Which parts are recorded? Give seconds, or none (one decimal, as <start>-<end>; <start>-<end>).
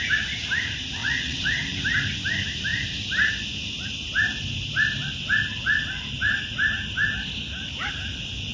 0.0-1.0; 1.6-8.5